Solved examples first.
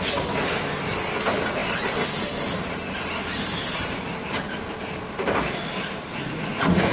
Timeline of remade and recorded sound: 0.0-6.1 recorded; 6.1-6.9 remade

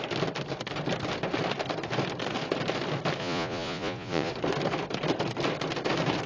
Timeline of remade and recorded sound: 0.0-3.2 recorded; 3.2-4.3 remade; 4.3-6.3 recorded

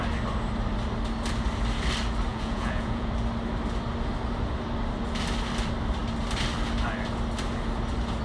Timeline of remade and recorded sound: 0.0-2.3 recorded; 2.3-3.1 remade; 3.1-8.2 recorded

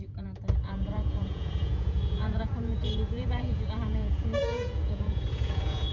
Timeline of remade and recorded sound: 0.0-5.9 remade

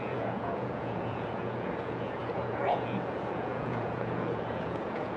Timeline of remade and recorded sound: 0.0-5.2 remade

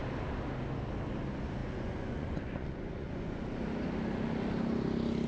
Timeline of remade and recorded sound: 0.0-1.6 recorded; 1.6-3.4 remade; 3.4-5.3 recorded

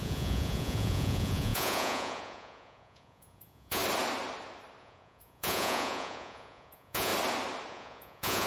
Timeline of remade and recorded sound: 0.0-3.8 remade; 3.8-4.8 recorded; 4.8-7.1 remade; 7.1-7.7 recorded; 7.7-8.5 remade